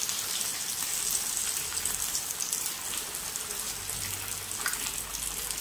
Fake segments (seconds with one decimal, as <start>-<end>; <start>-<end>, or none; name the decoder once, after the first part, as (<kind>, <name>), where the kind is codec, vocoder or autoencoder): none